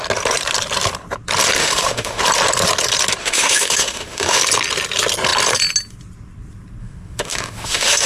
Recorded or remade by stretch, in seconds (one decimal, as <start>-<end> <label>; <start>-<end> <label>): 0.0-1.6 recorded; 1.6-2.2 remade; 2.2-3.2 recorded; 3.2-4.4 remade; 4.4-6.8 recorded; 6.8-8.1 remade